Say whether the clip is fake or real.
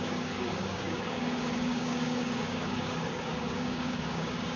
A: fake